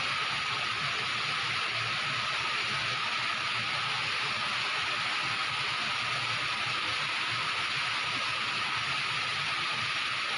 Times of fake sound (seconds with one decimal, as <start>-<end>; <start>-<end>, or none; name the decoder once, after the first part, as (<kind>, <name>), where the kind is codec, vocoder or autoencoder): none